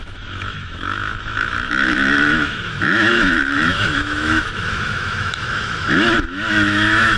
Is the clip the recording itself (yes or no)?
no